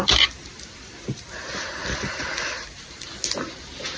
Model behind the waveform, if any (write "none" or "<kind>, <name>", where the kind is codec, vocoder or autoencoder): none